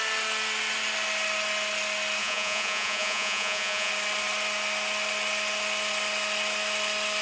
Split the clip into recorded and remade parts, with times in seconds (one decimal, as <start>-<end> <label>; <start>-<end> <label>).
0.0-2.2 recorded; 2.2-3.9 remade; 3.9-7.2 recorded